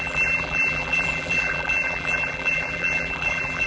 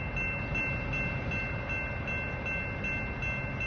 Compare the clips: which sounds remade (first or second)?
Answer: first